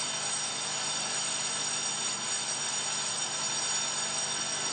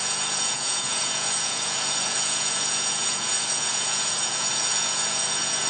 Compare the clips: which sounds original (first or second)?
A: first